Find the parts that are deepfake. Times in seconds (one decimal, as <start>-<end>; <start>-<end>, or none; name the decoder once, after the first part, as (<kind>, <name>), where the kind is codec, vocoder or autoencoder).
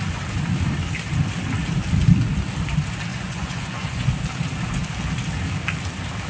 3.1-4.1 (vocoder, Vocos)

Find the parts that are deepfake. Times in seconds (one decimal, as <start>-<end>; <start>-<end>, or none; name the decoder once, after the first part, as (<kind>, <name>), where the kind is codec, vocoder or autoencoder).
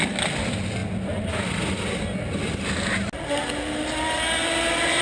none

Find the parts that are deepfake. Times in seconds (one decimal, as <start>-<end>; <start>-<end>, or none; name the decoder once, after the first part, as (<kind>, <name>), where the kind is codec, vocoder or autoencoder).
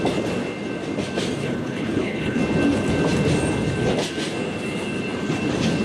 1.4-2.4 (codec, HILCodec)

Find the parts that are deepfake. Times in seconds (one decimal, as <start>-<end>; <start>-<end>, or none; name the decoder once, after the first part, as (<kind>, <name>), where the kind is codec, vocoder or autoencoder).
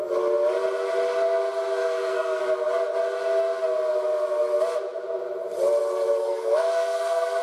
1.8-2.4 (codec, SNAC); 6.2-7.4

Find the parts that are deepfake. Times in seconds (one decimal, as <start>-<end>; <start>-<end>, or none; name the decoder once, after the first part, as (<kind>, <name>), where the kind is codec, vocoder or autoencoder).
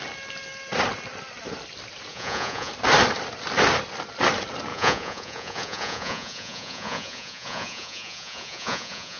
2.1-2.7 (vocoder, Vocos); 4.7-9.2